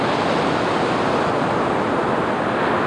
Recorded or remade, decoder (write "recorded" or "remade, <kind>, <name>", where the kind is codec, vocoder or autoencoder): recorded